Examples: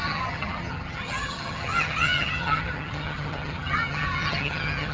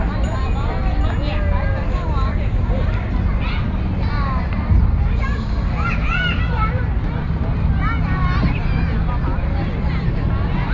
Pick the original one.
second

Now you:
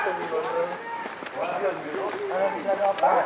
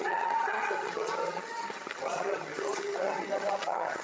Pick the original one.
first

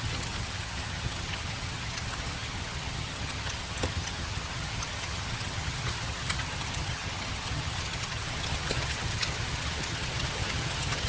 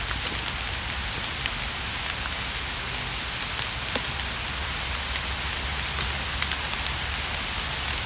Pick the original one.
second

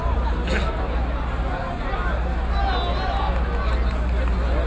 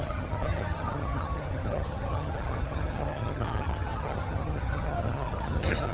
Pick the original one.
first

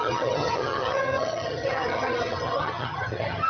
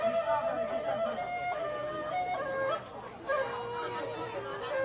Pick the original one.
second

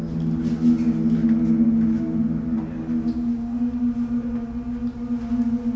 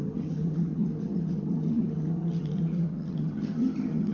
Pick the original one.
first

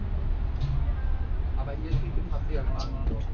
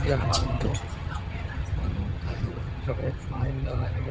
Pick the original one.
first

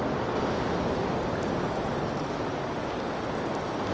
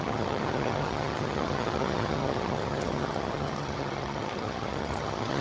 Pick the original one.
first